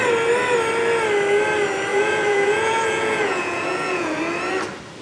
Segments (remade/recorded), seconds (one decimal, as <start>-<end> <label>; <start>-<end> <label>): 0.0-1.9 recorded; 1.9-4.2 remade; 4.2-5.0 recorded